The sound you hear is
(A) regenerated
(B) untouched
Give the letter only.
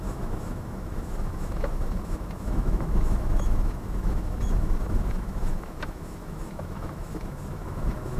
A